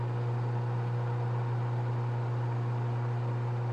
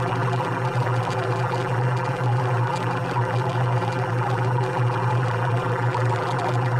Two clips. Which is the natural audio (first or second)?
first